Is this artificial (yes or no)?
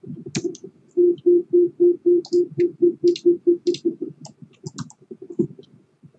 no